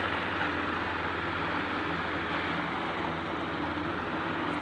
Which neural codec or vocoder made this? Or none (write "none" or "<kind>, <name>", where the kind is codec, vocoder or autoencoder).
none